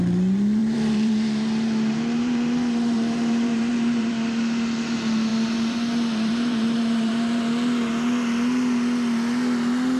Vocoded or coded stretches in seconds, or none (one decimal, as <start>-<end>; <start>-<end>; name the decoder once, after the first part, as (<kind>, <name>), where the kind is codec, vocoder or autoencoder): 0.6-4.1 (vocoder, BigVGAN v2); 5.3-7.4